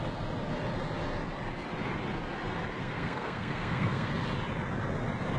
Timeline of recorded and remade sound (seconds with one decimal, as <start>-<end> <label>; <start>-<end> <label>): 0.0-2.8 recorded; 2.8-4.1 remade; 4.1-5.4 recorded